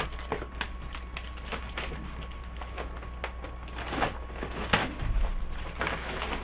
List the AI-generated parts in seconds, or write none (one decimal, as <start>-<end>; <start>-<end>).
none